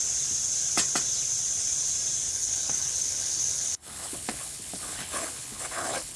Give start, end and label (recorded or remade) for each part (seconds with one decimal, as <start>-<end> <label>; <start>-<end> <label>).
0.0-2.3 recorded; 2.3-6.2 remade